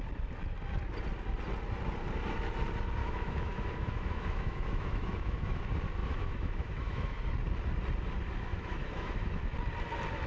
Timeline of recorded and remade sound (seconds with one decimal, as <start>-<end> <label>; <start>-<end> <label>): 0.0-3.0 recorded; 3.0-5.6 remade; 5.6-6.0 recorded; 6.0-7.3 remade; 7.3-8.5 recorded; 8.5-9.4 remade; 9.4-10.3 recorded